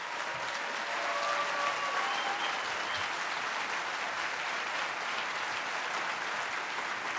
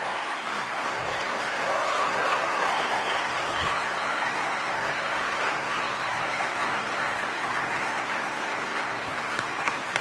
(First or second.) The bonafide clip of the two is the first